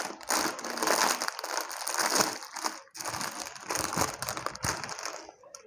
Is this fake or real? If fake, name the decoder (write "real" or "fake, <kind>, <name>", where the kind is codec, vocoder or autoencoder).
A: real